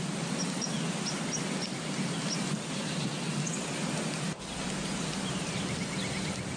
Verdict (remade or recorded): recorded